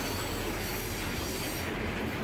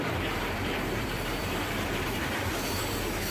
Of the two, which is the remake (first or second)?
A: second